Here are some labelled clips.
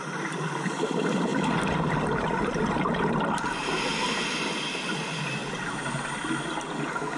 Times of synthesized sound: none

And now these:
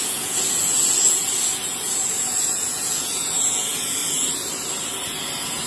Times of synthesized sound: 0.0-4.0 (vocoder, Vocos); 5.1-5.7

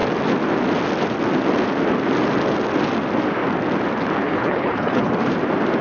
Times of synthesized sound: 4.2-5.1 (codec, HILCodec)

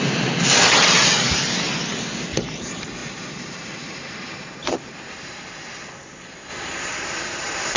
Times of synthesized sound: 3.0-5.5 (vocoder, BigVGAN v2); 6.5-7.8